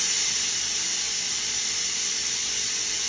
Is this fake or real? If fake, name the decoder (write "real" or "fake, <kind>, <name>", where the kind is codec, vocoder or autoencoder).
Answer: real